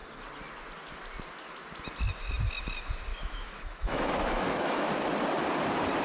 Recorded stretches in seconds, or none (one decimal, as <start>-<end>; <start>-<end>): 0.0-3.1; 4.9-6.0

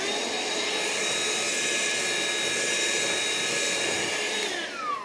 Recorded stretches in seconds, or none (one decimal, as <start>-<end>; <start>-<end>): 0.0-5.0

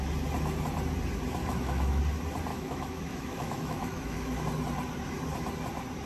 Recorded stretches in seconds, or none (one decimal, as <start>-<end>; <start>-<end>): 0.0-1.4; 2.0-2.5; 4.4-6.1

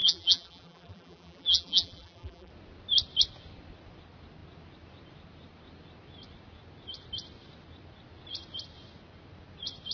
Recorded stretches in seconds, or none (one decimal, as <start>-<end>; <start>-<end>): 2.5-9.9

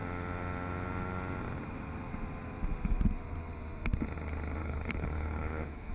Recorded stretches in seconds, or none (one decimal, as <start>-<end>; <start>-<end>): 0.0-4.6

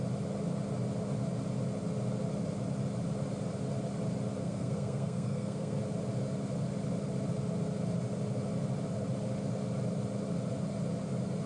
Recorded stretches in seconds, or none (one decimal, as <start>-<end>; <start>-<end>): 0.0-4.4; 5.8-11.5

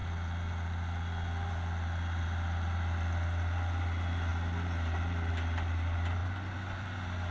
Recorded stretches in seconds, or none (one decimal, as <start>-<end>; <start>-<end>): 0.0-7.3